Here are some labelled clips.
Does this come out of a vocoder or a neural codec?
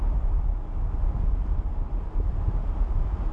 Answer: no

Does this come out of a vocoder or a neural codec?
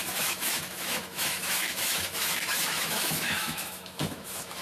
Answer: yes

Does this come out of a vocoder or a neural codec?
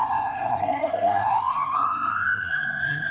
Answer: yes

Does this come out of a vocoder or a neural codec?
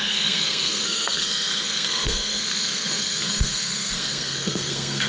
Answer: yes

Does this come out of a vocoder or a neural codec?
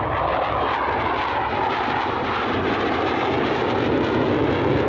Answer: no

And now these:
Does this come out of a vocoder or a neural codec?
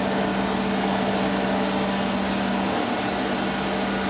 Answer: no